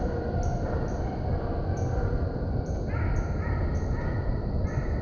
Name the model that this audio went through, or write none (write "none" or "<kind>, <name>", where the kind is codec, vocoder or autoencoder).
none